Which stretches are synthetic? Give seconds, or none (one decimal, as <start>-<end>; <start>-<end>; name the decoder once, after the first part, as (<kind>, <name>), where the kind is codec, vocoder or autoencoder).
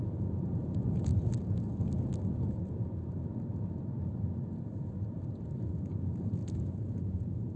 0.0-1.1 (vocoder, Vocos); 5.7-7.6